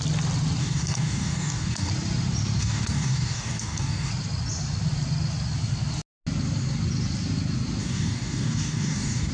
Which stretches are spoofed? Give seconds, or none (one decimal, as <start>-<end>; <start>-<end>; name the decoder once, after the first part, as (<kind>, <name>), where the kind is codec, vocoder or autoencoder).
0.6-1.9 (codec, DAC); 2.6-4.1; 7.8-9.3

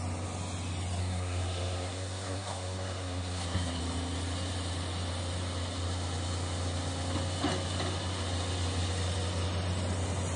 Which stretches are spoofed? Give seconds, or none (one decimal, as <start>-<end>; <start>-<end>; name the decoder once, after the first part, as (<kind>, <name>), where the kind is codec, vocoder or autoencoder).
1.0-3.8 (codec, SNAC)

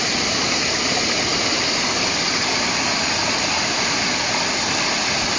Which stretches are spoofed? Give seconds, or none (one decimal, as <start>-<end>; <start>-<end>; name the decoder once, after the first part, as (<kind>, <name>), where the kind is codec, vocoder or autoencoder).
none

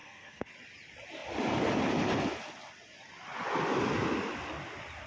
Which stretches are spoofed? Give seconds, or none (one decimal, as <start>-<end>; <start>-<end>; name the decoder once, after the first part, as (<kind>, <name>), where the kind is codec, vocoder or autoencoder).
0.0-0.5 (codec, SNAC)

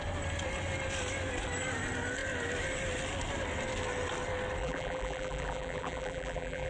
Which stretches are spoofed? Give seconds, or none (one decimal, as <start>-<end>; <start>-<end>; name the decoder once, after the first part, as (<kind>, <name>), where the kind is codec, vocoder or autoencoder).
4.6-6.7 (vocoder, BigVGAN v2)